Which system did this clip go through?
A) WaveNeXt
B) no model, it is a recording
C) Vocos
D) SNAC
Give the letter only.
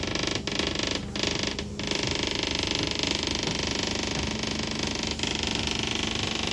B